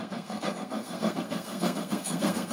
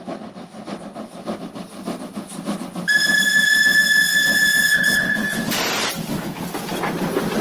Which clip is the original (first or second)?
second